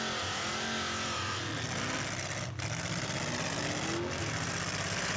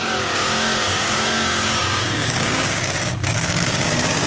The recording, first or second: first